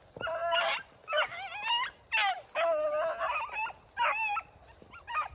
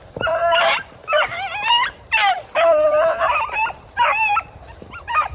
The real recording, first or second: first